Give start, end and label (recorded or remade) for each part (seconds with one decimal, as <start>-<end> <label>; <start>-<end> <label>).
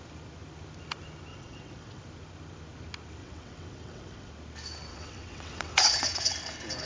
0.0-1.3 recorded; 1.3-2.0 remade; 2.0-3.2 recorded; 3.2-4.3 remade; 4.3-4.9 recorded; 4.9-6.3 remade; 6.3-6.9 recorded